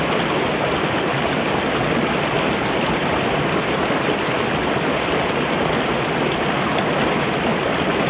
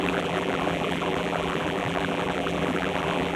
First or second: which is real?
first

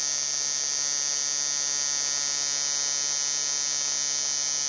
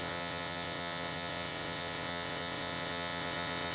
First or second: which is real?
first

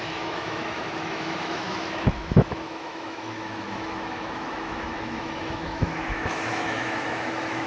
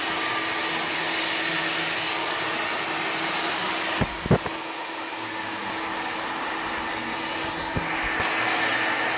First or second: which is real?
second